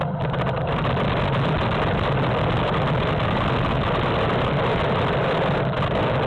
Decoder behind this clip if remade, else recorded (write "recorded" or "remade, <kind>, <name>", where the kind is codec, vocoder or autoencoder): recorded